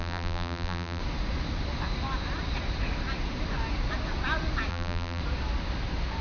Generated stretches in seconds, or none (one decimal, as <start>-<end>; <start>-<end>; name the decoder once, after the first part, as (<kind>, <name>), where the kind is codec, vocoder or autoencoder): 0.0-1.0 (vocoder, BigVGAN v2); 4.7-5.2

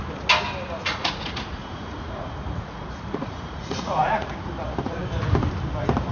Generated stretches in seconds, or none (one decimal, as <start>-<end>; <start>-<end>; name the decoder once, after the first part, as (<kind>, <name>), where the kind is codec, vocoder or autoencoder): 0.8-4.5 (vocoder, Vocos)

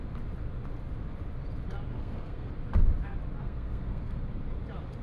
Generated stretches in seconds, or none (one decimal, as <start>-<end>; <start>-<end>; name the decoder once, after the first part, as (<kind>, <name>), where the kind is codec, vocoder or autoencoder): 1.9-2.5 (codec, SNAC); 3.4-4.2

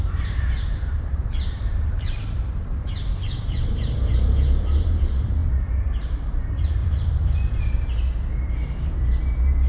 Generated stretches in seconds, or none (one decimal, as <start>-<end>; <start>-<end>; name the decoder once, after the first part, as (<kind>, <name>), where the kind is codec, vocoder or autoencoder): 0.0-2.7 (vocoder, BigVGAN v2); 3.4-5.4; 6.3-9.7

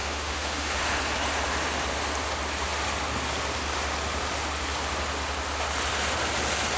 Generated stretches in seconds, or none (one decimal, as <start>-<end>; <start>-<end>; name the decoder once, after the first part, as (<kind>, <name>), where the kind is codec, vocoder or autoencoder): 0.0-0.8 (autoencoder, DAC-VAE)

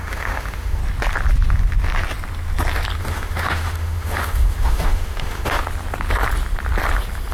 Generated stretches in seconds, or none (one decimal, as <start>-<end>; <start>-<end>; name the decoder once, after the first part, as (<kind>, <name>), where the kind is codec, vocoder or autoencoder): 0.0-0.8 (autoencoder, DAC-VAE); 3.0-5.6

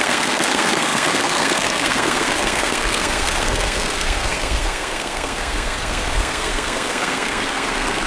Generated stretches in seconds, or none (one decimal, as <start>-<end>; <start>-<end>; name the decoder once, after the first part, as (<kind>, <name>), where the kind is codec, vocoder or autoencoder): 0.0-8.1 (codec, SNAC)